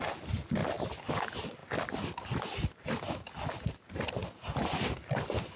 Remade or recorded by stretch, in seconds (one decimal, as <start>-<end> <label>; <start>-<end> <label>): 0.0-0.6 recorded; 0.6-1.1 remade; 1.1-4.2 recorded; 4.2-5.6 remade